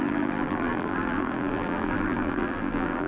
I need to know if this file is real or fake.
fake